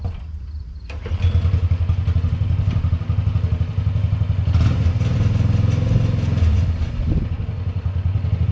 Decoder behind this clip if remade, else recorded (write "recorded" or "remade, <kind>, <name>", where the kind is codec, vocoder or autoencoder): recorded